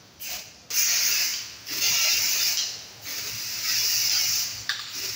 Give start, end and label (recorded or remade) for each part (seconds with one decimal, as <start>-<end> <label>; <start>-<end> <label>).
0.0-5.2 recorded